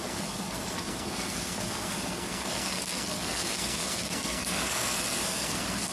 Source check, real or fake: fake